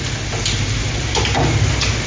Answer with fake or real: real